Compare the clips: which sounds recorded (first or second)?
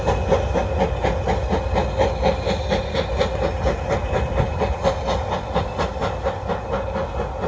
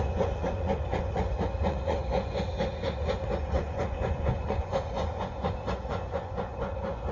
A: first